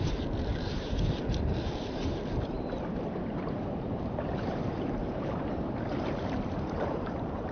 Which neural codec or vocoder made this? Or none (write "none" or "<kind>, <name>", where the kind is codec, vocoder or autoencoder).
vocoder, BigVGAN v2